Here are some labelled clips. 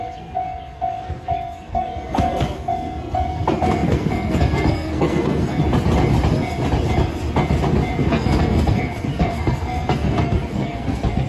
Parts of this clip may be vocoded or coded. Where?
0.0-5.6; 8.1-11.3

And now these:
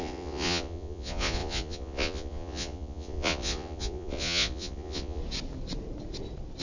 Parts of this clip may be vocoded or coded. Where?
0.0-5.2

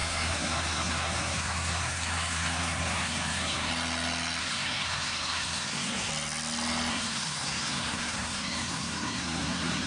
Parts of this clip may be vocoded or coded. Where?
0.0-3.7; 4.4-6.1; 6.9-9.9

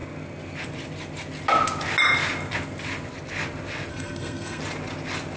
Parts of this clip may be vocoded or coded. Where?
3.9-4.6

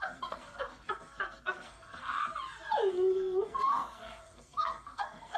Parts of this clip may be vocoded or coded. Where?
0.0-2.2; 2.9-5.4

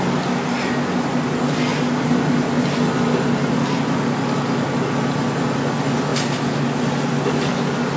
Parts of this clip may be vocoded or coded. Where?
none

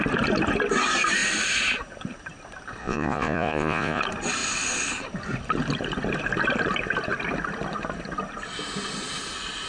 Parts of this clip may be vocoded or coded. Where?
2.8-4.0

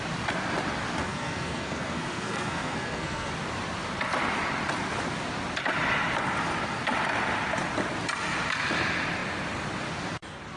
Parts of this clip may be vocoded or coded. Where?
1.0-3.3